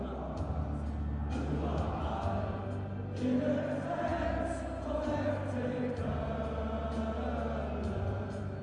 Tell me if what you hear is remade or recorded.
recorded